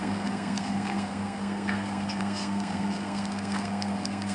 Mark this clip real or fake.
fake